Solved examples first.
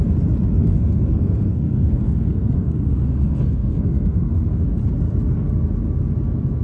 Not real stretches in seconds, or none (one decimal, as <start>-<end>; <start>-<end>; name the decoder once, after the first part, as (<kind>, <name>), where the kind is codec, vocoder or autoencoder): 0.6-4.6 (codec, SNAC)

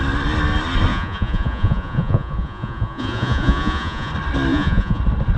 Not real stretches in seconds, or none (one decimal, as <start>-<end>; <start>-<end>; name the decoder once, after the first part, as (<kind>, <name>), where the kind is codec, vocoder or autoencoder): 0.9-4.1 (vocoder, Vocos); 4.5-5.0

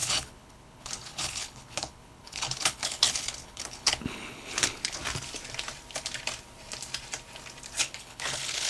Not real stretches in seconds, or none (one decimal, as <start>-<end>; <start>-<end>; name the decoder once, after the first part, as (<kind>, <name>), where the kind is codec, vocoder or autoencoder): 0.0-5.0 (codec, HILCodec); 7.8-8.7